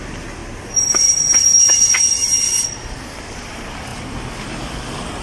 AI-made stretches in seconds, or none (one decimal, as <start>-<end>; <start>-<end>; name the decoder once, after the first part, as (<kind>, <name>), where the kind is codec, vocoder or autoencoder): none